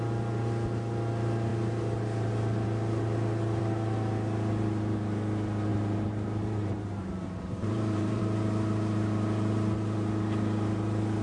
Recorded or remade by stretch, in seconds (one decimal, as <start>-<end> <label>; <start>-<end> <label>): 0.0-5.7 recorded; 5.7-8.2 remade; 8.2-11.2 recorded